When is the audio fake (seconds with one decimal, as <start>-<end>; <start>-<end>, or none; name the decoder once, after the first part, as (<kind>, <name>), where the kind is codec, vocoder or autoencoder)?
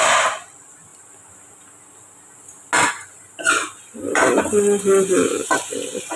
none